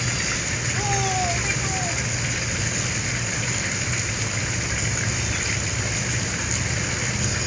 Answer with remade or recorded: recorded